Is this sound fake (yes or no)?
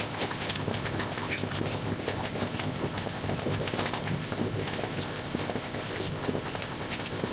yes